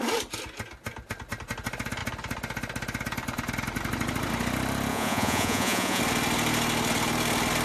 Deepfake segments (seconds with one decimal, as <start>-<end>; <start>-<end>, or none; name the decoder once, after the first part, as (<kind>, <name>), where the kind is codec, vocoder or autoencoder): 4.9-6.0 (vocoder, Vocos)